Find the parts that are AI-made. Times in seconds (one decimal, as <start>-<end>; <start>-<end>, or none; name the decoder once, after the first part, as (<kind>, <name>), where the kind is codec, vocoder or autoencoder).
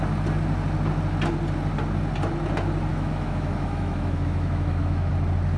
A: 2.9-5.1 (autoencoder, DAC-VAE)